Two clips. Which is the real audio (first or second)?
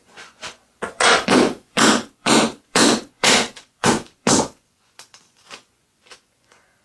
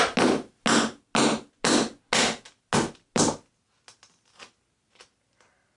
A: second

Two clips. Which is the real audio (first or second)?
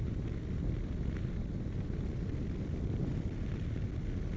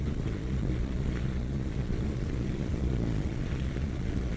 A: first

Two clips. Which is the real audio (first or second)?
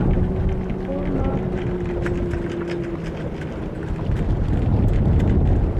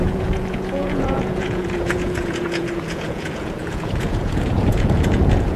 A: first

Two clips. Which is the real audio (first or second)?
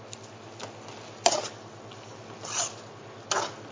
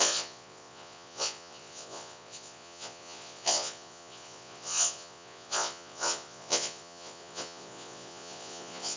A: first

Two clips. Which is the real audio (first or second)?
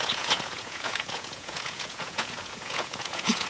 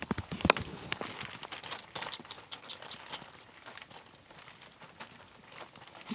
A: second